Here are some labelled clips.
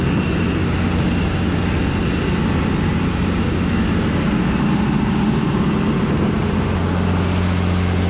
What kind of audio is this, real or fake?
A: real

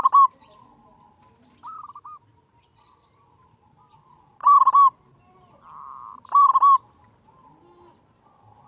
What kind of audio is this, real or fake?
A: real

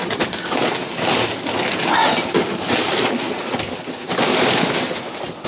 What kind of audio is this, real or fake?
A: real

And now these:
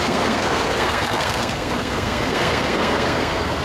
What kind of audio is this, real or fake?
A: fake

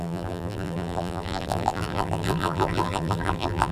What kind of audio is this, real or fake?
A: fake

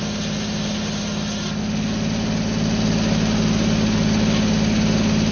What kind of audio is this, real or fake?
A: real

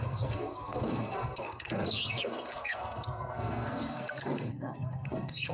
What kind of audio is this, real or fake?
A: fake